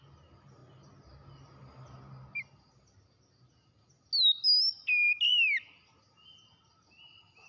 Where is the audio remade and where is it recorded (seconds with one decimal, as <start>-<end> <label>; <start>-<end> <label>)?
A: 0.0-7.5 recorded